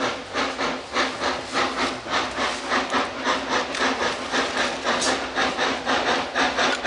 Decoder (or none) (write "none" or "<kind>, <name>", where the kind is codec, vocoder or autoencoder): none